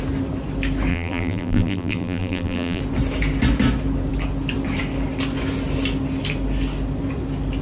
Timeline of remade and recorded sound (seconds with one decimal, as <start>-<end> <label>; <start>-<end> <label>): 0.0-0.9 recorded; 0.9-2.8 remade; 2.8-7.6 recorded